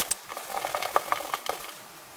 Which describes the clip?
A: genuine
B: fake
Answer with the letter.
A